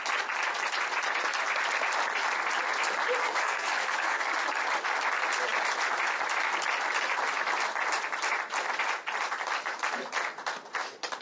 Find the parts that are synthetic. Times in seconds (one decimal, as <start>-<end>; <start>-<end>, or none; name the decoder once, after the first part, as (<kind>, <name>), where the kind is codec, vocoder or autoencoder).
3.2-4.3 (codec, SNAC)

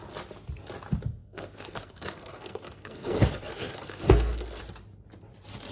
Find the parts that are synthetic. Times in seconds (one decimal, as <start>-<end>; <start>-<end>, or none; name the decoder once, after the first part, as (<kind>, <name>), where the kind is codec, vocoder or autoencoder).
1.2-4.6 (codec, SNAC)

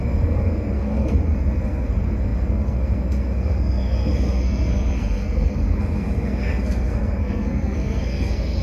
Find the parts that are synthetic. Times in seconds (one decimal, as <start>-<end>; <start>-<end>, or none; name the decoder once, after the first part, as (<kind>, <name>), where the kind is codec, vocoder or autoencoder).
0.0-8.6 (codec, SNAC)

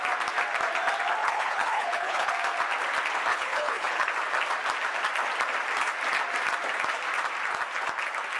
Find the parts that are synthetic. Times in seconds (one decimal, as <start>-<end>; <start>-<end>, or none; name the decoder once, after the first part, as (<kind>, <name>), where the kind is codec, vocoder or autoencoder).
1.2-2.3 (codec, HILCodec); 3.3-4.1

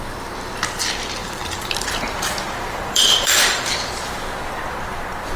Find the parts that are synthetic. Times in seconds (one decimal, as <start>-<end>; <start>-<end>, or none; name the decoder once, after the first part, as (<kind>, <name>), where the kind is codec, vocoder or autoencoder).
1.2-3.7 (vocoder, BigVGAN v2)